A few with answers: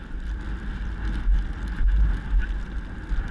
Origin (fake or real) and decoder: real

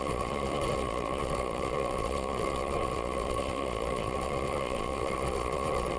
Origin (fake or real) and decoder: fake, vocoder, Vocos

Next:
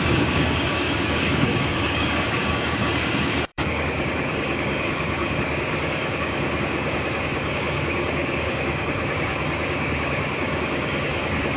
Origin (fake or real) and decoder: fake, codec, DAC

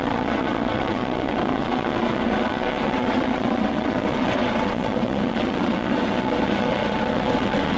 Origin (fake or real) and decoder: fake, vocoder, WaveNeXt